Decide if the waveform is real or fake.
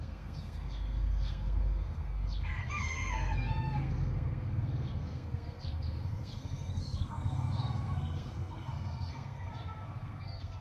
fake